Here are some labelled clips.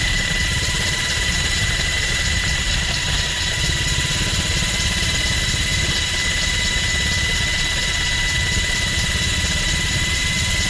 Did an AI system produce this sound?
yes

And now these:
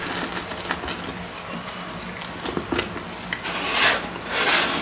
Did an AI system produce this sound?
no